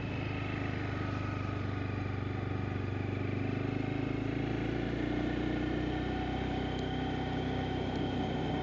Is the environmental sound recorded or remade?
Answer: recorded